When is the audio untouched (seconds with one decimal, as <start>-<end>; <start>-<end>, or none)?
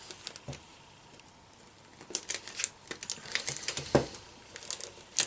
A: 0.0-5.3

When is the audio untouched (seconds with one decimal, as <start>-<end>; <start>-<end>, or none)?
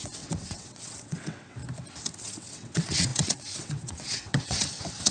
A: 1.6-2.2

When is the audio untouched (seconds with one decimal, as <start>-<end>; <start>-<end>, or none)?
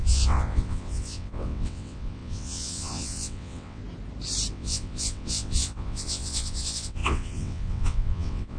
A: 3.8-4.5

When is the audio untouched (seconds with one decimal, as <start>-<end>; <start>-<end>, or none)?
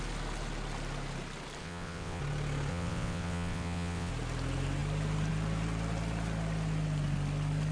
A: 0.0-1.6; 2.2-2.7; 4.1-7.7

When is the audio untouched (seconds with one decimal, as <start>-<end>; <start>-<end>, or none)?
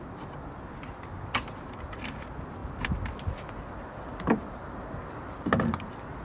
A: 0.0-6.2